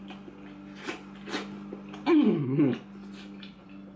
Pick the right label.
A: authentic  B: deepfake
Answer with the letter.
A